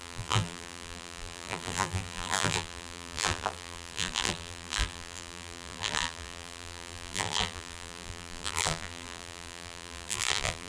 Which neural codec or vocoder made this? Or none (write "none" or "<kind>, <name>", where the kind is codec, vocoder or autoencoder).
vocoder, BigVGAN v2